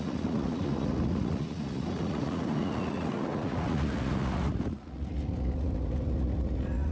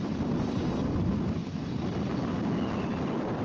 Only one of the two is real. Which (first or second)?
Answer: second